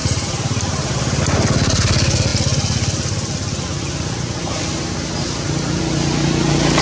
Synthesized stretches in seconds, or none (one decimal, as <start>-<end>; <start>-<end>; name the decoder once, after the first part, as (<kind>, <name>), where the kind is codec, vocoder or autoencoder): 0.0-1.2 (vocoder, BigVGAN v2)